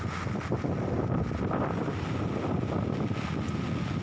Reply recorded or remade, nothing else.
recorded